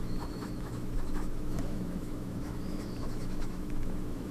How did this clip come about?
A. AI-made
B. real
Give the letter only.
A